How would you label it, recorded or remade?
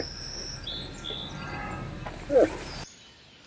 recorded